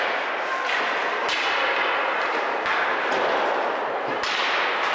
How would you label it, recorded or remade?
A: recorded